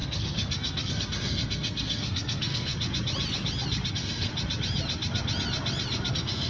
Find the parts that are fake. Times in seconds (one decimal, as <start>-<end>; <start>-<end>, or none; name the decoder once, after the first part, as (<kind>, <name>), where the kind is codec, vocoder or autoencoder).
0.0-2.7 (codec, SNAC); 3.9-4.3; 6.1-6.5